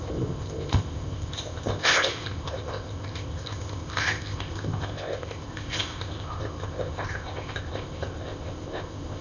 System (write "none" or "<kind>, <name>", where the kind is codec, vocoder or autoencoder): codec, ZipCodec